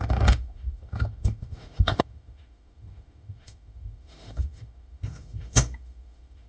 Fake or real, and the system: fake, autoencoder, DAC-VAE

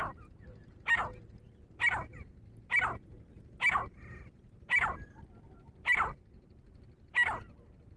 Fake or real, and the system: real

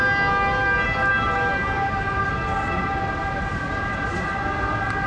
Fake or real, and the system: real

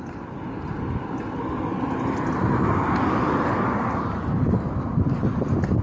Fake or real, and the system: real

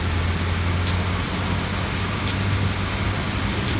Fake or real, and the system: real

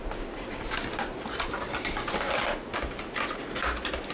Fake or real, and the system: real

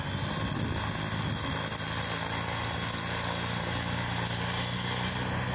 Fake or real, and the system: real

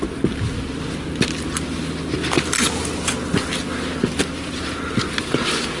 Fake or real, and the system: real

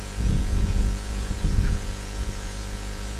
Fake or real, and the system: fake, vocoder, Vocos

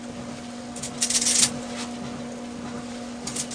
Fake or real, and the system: real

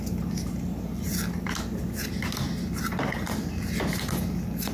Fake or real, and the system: real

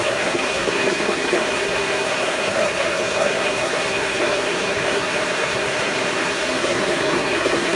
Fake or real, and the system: fake, codec, SNAC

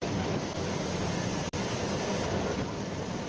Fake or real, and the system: fake, vocoder, BigVGAN v2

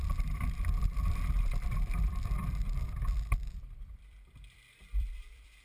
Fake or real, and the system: fake, vocoder, BigVGAN v2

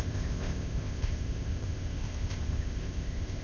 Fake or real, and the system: fake, codec, ZipCodec